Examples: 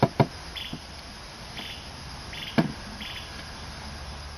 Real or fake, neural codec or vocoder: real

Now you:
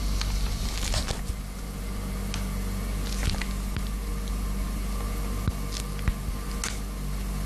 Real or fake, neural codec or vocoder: real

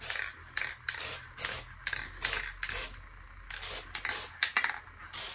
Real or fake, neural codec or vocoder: real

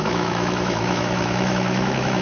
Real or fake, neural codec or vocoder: fake, autoencoder, DAC-VAE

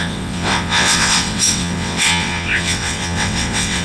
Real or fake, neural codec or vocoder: fake, vocoder, WaveNeXt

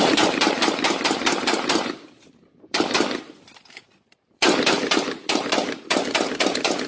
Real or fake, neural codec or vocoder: fake, vocoder, BigVGAN v2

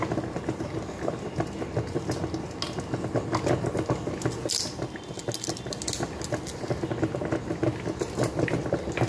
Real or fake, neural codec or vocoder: real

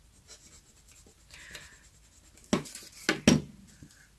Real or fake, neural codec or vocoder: real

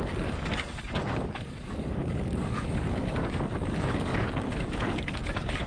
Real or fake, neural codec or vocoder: fake, codec, DAC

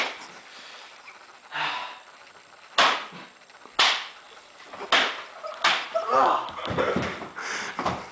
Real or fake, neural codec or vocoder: real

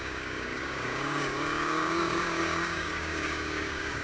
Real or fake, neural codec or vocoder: fake, codec, DAC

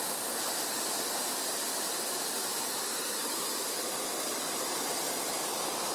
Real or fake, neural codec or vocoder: fake, vocoder, BigVGAN v2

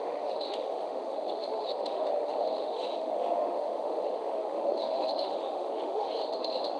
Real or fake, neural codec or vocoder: fake, autoencoder, DAC-VAE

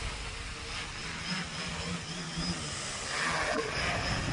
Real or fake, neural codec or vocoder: real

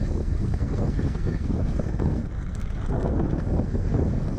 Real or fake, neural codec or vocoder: fake, codec, SNAC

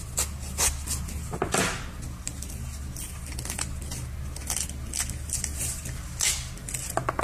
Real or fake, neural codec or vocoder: real